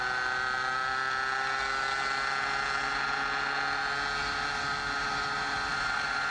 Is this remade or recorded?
recorded